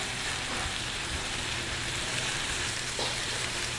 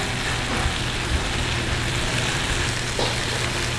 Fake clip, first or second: first